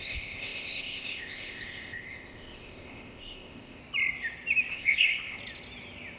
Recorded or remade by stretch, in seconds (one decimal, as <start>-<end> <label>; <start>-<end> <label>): 0.0-3.8 remade; 3.8-4.7 recorded; 4.7-5.4 remade; 5.4-6.2 recorded